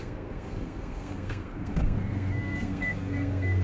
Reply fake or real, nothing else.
fake